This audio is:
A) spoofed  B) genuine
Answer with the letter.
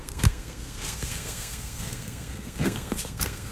A